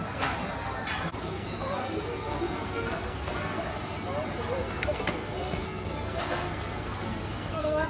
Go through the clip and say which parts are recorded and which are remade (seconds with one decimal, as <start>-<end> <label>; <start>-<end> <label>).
0.0-0.4 remade; 0.4-1.2 recorded; 1.2-3.6 remade; 3.6-4.4 recorded; 4.4-7.9 remade